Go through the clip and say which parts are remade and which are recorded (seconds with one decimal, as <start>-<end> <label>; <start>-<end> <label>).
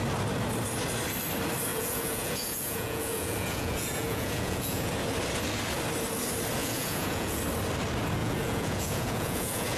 0.0-1.7 recorded; 1.7-4.9 remade; 4.9-6.6 recorded; 6.6-7.4 remade; 7.4-8.2 recorded; 8.2-9.8 remade